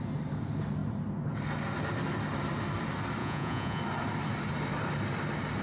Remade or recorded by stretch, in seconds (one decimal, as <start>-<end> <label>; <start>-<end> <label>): 0.0-3.2 recorded; 3.2-3.8 remade; 3.8-5.6 recorded

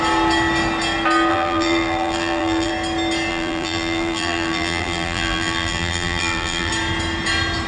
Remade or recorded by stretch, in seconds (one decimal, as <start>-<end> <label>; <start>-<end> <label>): 0.0-1.3 recorded; 1.3-2.7 remade; 2.7-3.3 recorded; 3.3-6.7 remade; 6.7-7.7 recorded

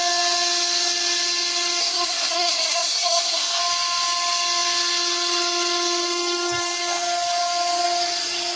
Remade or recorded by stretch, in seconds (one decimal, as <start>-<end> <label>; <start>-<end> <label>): 0.0-1.8 recorded; 1.8-3.6 remade; 3.6-8.6 recorded